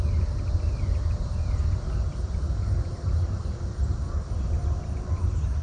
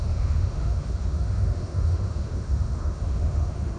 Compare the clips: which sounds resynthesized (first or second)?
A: second